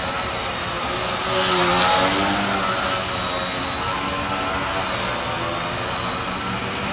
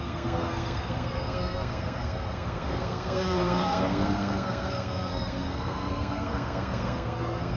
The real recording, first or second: first